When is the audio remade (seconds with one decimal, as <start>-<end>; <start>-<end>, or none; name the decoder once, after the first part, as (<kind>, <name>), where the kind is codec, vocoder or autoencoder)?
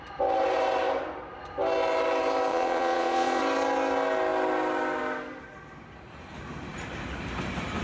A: 2.5-3.4 (vocoder, Vocos)